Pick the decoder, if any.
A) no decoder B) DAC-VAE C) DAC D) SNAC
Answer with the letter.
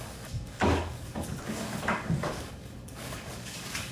C